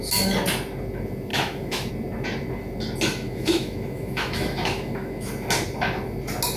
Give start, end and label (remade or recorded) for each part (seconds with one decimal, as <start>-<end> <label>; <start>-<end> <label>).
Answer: 0.0-1.3 recorded; 1.3-1.9 remade; 1.9-3.1 recorded; 3.1-5.3 remade; 5.3-6.6 recorded